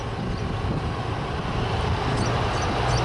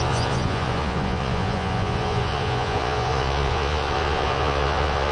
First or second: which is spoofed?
second